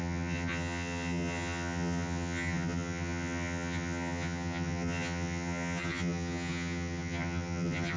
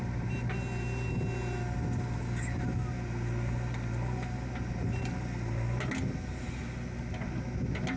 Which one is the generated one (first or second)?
first